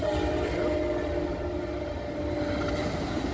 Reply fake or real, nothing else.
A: real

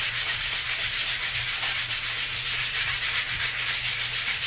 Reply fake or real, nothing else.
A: fake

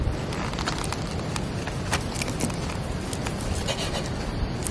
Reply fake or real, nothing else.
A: real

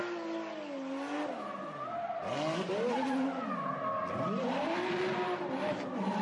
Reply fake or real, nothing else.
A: real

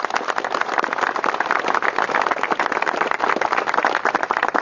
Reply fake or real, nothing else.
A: real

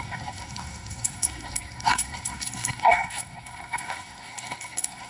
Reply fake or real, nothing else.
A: fake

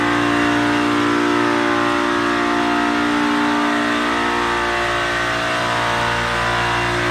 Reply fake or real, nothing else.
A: real